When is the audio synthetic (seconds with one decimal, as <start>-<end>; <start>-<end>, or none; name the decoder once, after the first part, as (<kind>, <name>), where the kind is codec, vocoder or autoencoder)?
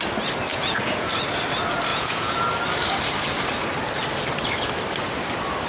0.5-1.1 (vocoder, Vocos); 1.9-2.4